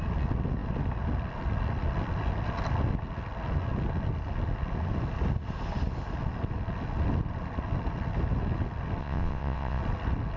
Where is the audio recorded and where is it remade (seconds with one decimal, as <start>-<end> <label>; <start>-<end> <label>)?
0.0-9.0 recorded; 9.0-9.8 remade; 9.8-10.4 recorded